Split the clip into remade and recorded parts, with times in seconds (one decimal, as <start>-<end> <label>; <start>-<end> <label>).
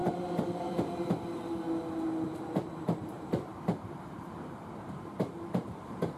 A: 0.0-2.8 recorded; 2.8-6.2 remade